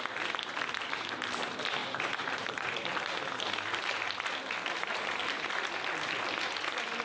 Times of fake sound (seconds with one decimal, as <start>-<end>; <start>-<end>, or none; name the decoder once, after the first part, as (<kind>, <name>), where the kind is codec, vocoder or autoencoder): 1.8-3.1 (vocoder, BigVGAN v2)

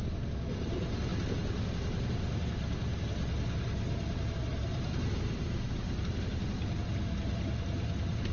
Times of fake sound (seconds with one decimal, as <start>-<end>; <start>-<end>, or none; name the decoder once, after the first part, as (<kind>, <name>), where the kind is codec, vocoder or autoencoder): 4.7-6.0 (vocoder, BigVGAN v2)

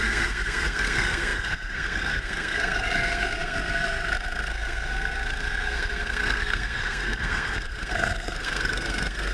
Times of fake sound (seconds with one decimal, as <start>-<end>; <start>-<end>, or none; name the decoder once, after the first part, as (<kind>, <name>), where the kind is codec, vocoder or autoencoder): 0.0-9.3 (codec, SNAC)

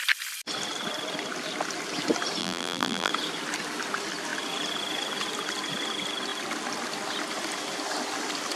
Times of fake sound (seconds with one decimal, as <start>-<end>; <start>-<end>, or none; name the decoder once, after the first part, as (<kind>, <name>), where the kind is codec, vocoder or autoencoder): 2.4-3.1 (vocoder, BigVGAN v2)

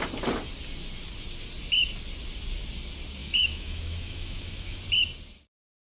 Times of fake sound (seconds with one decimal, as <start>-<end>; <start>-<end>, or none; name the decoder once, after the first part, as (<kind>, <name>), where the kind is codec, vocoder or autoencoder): 3.2-4.8 (autoencoder, DAC-VAE)

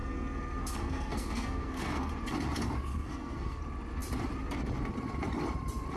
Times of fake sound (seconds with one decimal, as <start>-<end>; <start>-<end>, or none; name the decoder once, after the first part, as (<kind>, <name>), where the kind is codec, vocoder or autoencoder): 0.0-2.1 (codec, SNAC); 2.9-3.6